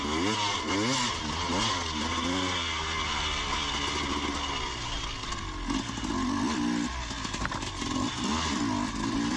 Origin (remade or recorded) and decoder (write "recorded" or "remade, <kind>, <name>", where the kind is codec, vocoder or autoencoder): recorded